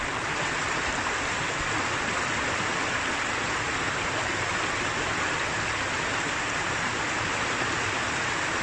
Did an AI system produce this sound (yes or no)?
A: no